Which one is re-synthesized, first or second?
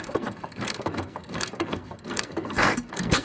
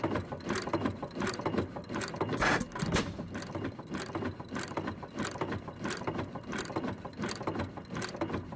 first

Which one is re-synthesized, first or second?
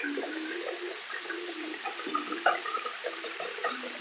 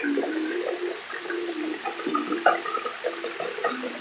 first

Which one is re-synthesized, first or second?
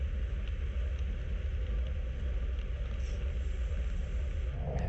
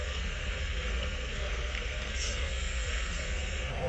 second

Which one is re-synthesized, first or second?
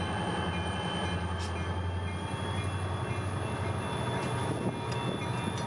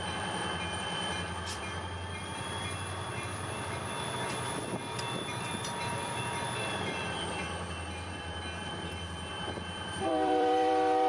second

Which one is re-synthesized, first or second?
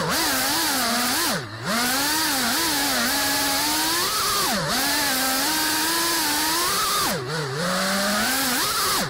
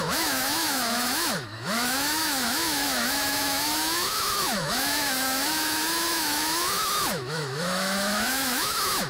second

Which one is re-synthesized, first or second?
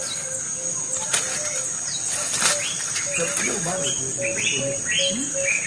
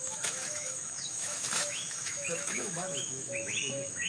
second